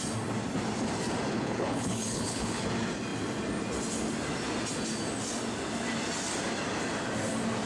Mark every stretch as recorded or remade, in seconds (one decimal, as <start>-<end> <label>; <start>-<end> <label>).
0.0-1.3 recorded; 1.3-2.6 remade; 2.6-7.7 recorded

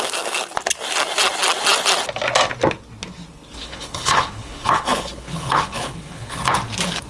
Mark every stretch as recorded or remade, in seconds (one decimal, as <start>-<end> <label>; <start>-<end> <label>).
0.0-3.6 recorded; 3.6-6.4 remade; 6.4-7.1 recorded